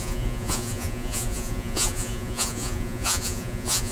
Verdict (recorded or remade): remade